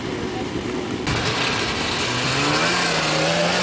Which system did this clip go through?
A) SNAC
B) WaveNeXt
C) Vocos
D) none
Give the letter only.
D